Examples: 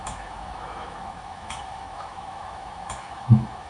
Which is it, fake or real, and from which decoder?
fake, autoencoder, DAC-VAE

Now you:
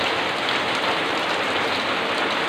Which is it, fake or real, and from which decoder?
real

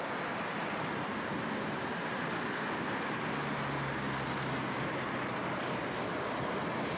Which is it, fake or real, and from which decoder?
real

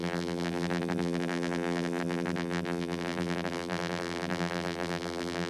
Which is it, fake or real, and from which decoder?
fake, vocoder, BigVGAN v2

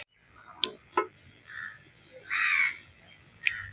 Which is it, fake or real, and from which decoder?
fake, vocoder, BigVGAN v2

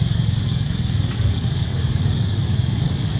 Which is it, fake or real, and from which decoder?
fake, codec, DAC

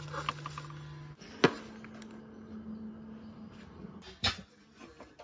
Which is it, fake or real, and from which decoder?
real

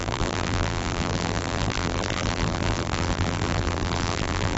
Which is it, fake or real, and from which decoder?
fake, vocoder, BigVGAN v2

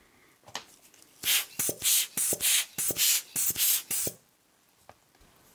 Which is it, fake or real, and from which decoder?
real